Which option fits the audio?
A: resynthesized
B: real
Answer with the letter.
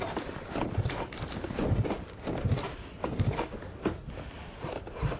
A